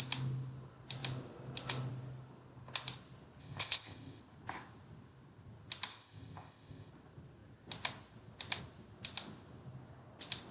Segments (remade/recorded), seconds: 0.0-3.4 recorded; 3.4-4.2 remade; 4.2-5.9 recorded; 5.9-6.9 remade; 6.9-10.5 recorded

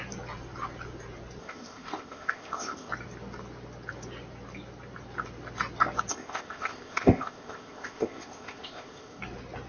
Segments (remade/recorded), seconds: 0.0-1.4 recorded; 1.4-2.9 remade; 2.9-6.1 recorded; 6.1-9.2 remade; 9.2-9.7 recorded

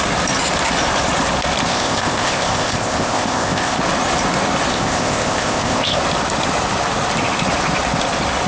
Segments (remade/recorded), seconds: 0.0-1.7 recorded; 1.7-3.8 remade; 3.8-4.7 recorded; 4.7-6.0 remade; 6.0-8.5 recorded

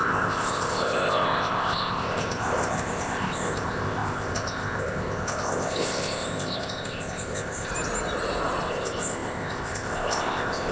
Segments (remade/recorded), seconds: 0.0-7.7 remade; 7.7-8.7 recorded; 8.7-10.7 remade

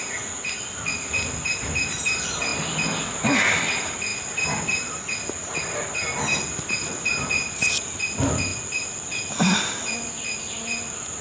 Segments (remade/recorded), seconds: 0.0-11.2 recorded